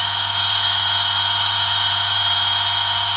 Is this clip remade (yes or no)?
yes